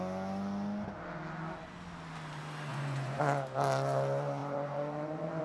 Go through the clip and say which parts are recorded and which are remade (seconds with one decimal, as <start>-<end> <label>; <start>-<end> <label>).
0.0-2.7 recorded; 2.7-3.2 remade; 3.2-4.4 recorded; 4.4-5.4 remade